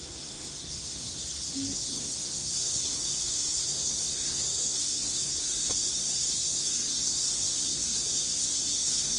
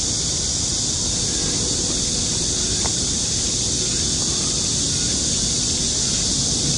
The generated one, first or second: first